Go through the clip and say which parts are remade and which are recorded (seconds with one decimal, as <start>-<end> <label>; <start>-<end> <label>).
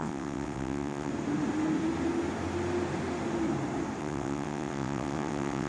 0.0-1.1 remade; 1.1-4.0 recorded; 4.0-5.7 remade